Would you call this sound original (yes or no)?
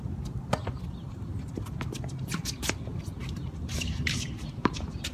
yes